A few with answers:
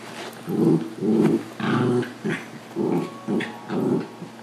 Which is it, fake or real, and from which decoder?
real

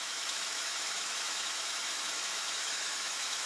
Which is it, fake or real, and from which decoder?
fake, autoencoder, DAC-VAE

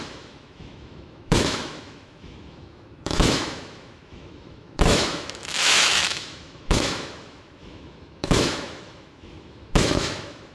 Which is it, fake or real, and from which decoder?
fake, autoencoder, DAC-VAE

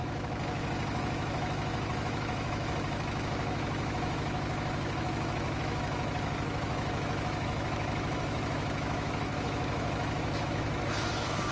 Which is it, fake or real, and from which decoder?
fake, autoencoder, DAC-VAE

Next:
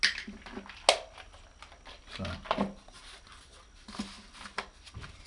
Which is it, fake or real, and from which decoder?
real